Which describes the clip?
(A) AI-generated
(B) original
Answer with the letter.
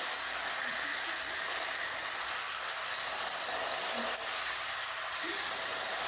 B